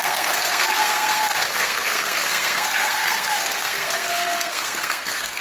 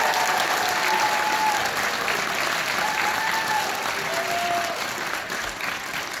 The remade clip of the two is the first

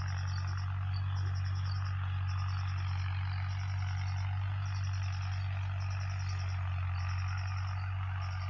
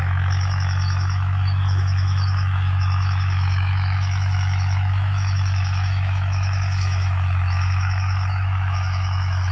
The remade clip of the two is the second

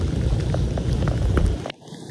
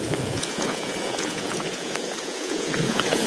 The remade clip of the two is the second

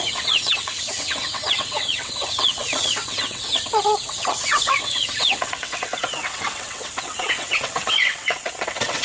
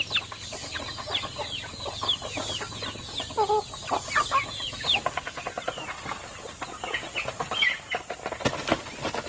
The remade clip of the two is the first